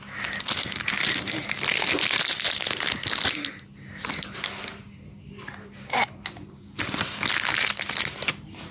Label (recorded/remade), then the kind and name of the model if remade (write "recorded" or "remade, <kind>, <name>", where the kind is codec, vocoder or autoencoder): recorded